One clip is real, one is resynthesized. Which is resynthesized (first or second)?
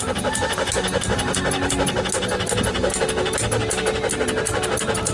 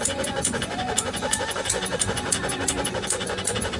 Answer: second